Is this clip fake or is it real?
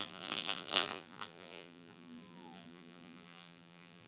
fake